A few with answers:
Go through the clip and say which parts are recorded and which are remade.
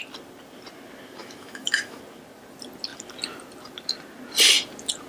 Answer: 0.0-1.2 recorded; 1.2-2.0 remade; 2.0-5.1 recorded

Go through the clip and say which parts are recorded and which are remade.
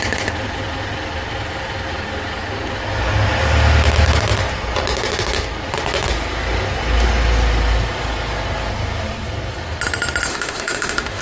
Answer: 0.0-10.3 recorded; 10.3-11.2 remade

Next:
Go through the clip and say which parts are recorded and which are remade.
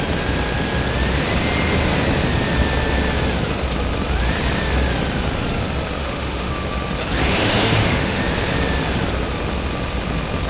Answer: 0.0-6.0 recorded; 6.0-6.5 remade; 6.5-7.2 recorded; 7.2-8.2 remade; 8.2-10.5 recorded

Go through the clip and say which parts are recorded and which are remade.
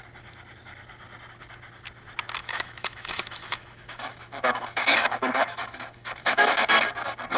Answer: 0.0-2.4 recorded; 2.4-6.6 remade; 6.6-7.4 recorded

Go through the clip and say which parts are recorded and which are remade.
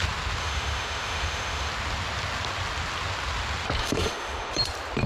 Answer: 0.0-0.4 recorded; 0.4-1.7 remade; 1.7-3.8 recorded; 3.8-4.5 remade; 4.5-5.1 recorded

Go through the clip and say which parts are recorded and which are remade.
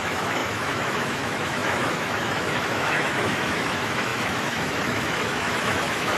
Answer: 0.0-6.2 remade